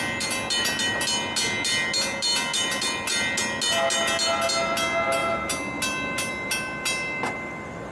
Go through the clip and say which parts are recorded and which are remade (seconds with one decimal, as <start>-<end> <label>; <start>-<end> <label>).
0.0-7.9 recorded